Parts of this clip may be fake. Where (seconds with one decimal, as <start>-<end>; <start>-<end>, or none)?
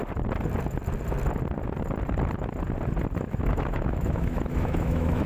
3.2-5.3